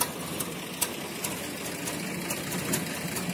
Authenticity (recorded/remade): recorded